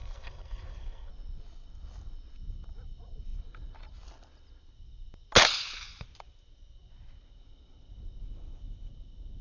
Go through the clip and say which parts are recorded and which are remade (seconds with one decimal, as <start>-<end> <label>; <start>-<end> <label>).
0.0-1.1 remade; 1.1-9.4 recorded